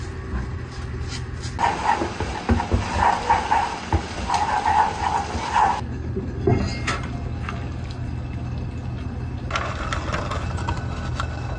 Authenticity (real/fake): real